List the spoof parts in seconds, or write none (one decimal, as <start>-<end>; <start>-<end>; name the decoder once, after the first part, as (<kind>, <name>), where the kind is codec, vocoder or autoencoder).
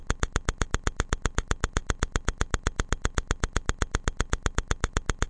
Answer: none